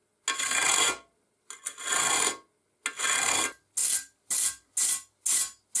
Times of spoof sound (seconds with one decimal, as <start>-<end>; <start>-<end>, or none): none